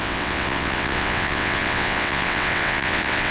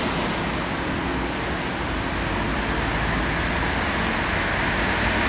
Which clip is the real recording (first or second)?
second